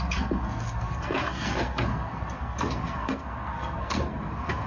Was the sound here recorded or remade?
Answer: remade